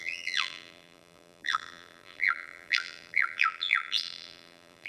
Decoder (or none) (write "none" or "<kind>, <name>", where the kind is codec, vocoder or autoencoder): vocoder, BigVGAN v2